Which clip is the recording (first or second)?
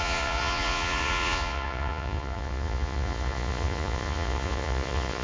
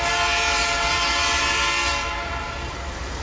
second